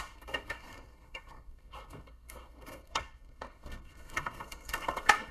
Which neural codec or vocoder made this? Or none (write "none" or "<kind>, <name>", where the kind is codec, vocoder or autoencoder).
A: codec, SNAC